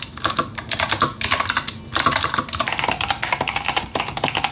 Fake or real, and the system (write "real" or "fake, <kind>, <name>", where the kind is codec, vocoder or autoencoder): real